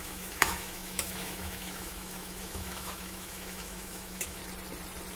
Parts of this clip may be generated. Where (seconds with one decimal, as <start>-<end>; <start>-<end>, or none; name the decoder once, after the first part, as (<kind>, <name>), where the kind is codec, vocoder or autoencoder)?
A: 0.0-4.4 (autoencoder, DAC-VAE)

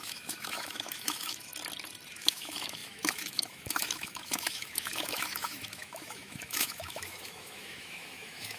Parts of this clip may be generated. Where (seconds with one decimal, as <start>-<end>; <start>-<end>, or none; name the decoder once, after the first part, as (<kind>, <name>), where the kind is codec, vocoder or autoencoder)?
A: 0.0-1.5 (autoencoder, DAC-VAE); 2.1-8.6

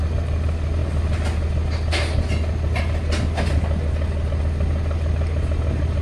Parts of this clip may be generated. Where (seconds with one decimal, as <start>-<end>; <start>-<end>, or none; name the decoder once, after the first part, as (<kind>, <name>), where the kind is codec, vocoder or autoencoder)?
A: none

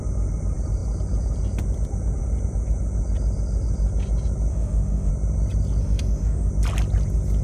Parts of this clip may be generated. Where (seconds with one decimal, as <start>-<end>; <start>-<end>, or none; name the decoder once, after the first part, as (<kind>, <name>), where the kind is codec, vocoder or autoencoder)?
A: 4.5-5.1 (autoencoder, DAC-VAE); 5.8-6.5

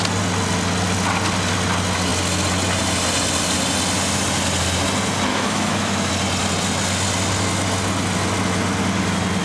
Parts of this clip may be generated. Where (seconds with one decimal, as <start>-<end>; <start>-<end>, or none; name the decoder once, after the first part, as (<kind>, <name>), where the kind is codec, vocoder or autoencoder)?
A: 5.3-6.1 (autoencoder, DAC-VAE)